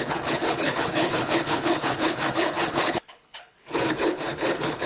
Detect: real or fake fake